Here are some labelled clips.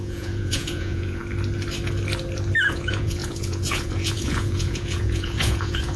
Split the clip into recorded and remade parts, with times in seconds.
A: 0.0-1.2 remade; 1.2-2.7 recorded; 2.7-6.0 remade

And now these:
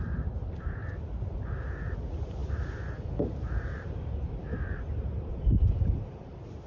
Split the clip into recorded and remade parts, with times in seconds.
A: 0.0-0.8 remade; 0.8-1.8 recorded; 1.8-6.7 remade

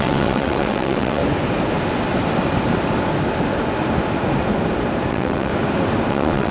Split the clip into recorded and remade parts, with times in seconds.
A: 0.0-1.2 remade; 1.2-5.1 recorded; 5.1-5.5 remade; 5.5-6.1 recorded; 6.1-6.5 remade

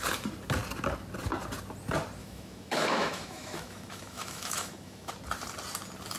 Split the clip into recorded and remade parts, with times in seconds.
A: 0.0-2.2 recorded; 2.2-5.1 remade; 5.1-6.2 recorded

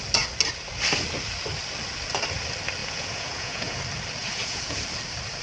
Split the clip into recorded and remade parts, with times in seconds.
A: 0.0-2.8 recorded; 2.8-3.8 remade; 3.8-4.2 recorded; 4.2-4.8 remade; 4.8-5.4 recorded

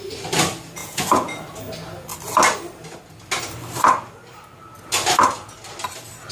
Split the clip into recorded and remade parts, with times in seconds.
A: 0.0-0.8 recorded; 0.8-1.4 remade; 1.4-6.3 recorded

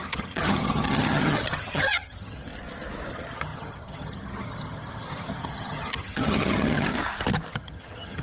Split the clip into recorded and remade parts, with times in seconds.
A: 0.0-2.5 remade; 2.5-3.1 recorded; 3.1-6.9 remade; 6.9-7.5 recorded; 7.5-8.2 remade

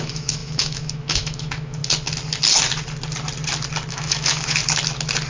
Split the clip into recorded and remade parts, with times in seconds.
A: 0.0-1.8 remade; 1.8-3.9 recorded; 3.9-4.6 remade; 4.6-5.3 recorded